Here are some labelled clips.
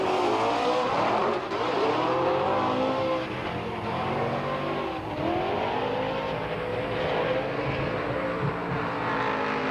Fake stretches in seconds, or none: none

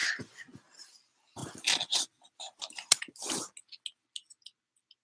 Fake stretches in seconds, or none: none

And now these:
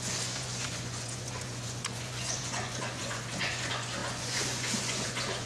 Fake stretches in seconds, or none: 0.0-5.5 (vocoder, Vocos)

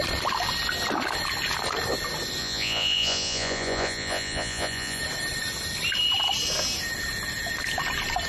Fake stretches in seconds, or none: 2.4-5.0 (vocoder, Vocos)

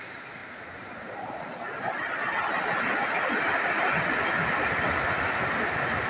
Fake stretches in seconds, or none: none